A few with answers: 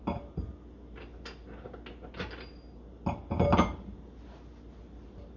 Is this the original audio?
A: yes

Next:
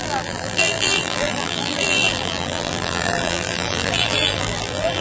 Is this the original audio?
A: no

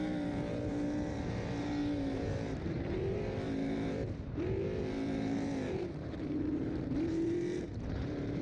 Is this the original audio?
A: no